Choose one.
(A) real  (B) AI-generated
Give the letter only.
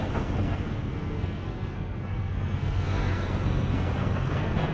B